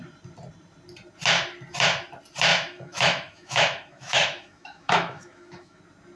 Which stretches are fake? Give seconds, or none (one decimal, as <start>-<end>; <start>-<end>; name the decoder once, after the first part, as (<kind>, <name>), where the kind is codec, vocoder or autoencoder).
2.5-5.8 (autoencoder, DAC-VAE)